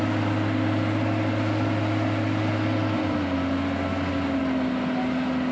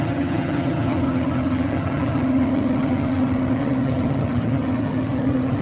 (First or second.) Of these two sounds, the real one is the first